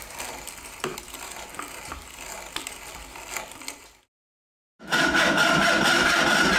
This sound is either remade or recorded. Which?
recorded